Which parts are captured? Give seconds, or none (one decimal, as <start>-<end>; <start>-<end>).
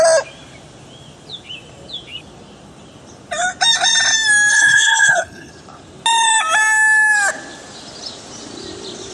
0.0-4.5; 5.5-9.1